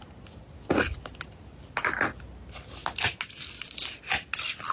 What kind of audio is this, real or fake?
real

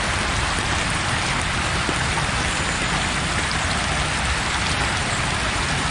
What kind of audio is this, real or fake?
real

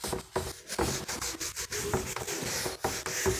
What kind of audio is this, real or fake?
real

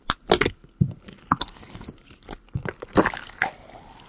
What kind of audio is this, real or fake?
real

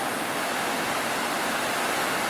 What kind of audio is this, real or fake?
real